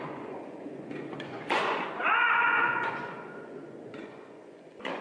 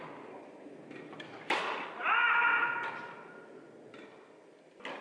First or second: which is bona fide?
second